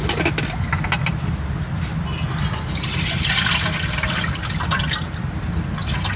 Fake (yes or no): no